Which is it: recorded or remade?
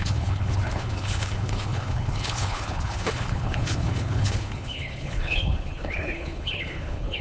remade